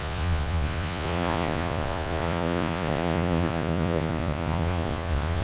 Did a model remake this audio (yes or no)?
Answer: yes